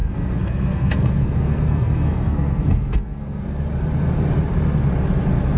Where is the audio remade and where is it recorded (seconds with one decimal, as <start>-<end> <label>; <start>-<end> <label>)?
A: 0.0-3.4 remade; 3.4-5.6 recorded